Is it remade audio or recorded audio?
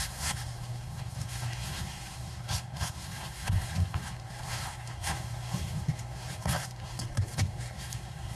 remade